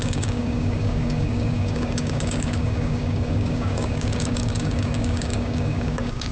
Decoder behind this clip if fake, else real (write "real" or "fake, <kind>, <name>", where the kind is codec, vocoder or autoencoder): fake, codec, DAC